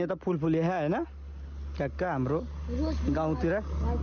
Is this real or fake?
real